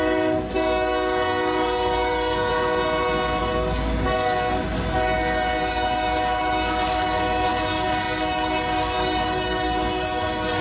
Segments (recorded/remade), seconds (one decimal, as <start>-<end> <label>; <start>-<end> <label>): 0.0-2.5 remade; 2.5-3.4 recorded; 3.4-10.6 remade